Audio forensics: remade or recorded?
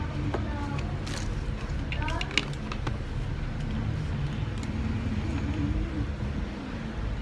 recorded